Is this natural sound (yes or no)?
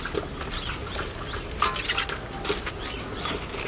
yes